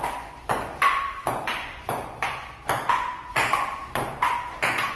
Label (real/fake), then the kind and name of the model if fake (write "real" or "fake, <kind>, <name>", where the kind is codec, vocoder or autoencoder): fake, vocoder, Vocos